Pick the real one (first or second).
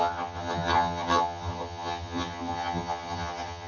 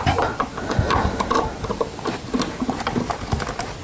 second